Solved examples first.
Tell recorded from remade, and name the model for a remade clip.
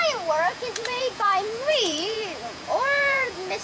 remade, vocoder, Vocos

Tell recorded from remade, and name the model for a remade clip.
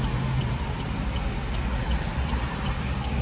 recorded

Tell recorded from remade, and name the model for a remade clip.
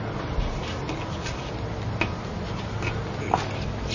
recorded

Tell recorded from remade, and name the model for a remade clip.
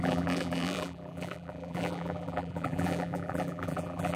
remade, vocoder, BigVGAN v2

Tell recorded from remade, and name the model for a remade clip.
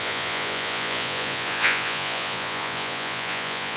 remade, vocoder, Vocos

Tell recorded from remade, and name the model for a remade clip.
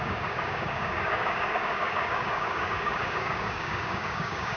remade, codec, DAC